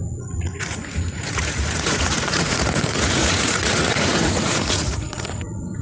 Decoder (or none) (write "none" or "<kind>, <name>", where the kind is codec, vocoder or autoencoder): vocoder, Vocos